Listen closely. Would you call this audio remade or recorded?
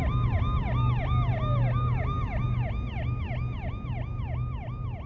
recorded